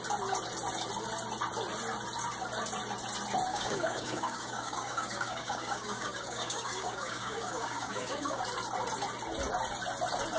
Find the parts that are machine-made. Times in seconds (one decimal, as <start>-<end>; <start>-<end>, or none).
3.5-8.4